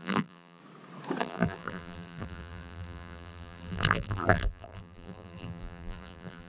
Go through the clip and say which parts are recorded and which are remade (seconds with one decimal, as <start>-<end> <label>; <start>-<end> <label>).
0.0-0.6 remade; 0.6-1.2 recorded; 1.2-6.5 remade